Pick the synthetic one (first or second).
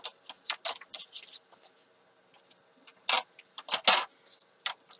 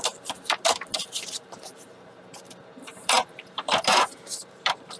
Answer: second